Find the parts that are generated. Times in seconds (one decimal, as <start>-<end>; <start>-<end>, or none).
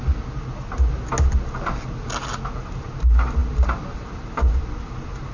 none